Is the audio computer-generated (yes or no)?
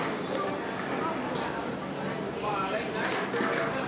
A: no